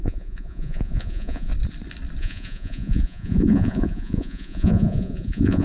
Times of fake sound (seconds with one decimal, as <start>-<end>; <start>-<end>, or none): 0.0-1.5; 2.2-5.6